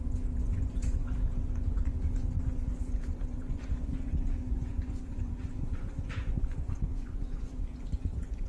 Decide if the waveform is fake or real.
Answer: fake